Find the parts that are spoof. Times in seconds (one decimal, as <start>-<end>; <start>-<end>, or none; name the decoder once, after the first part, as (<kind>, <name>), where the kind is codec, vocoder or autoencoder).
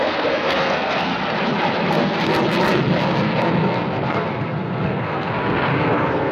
0.0-1.1 (codec, SNAC); 1.9-2.3; 3.0-6.3